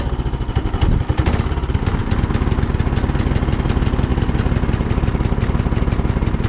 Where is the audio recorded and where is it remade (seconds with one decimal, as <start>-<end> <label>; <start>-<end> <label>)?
0.0-6.5 recorded